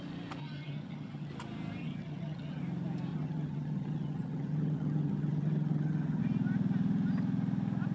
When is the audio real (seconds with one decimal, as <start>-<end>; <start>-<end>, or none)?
0.0-0.4; 1.3-1.8; 2.6-3.1; 6.2-7.9